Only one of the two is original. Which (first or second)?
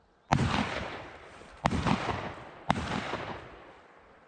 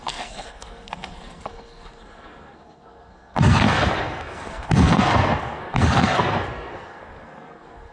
first